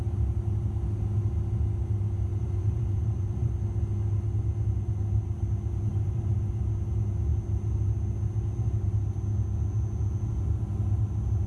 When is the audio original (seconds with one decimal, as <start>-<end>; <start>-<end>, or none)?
0.0-2.3; 3.5-5.9; 6.6-11.5